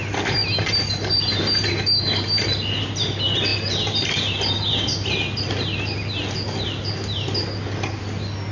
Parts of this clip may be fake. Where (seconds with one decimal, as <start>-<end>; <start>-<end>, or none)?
0.0-8.5